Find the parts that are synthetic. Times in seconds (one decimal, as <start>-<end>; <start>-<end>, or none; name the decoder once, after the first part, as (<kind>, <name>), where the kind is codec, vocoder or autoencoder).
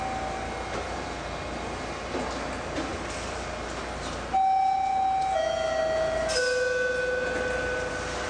none